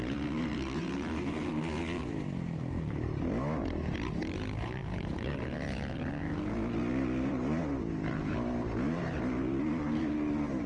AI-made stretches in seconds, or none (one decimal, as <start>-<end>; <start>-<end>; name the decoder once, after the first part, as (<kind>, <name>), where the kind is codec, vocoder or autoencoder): 0.0-1.5 (vocoder, BigVGAN v2); 4.2-10.7